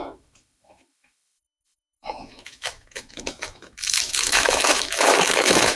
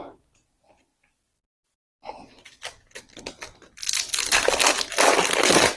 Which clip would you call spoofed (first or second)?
first